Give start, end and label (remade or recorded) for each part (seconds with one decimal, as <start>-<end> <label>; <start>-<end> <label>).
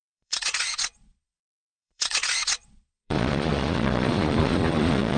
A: 0.0-5.2 remade